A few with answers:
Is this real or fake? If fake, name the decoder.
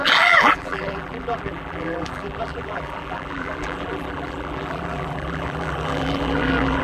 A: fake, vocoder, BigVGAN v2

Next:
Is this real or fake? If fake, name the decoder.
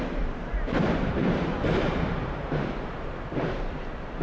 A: fake, vocoder, BigVGAN v2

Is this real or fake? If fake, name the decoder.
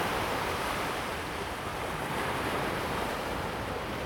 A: fake, vocoder, BigVGAN v2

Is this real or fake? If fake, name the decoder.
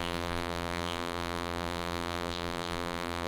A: fake, vocoder, BigVGAN v2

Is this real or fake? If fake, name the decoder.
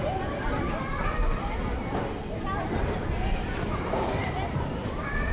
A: fake, vocoder, BigVGAN v2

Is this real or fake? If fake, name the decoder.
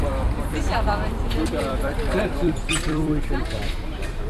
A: fake, vocoder, BigVGAN v2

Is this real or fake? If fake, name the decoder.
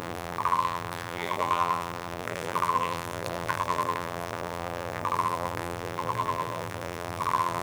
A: fake, vocoder, BigVGAN v2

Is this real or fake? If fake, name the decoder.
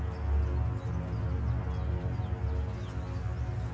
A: real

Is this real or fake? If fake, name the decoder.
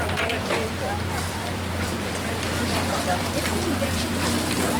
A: fake, vocoder, BigVGAN v2